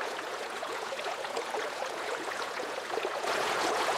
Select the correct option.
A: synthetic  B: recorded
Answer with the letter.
A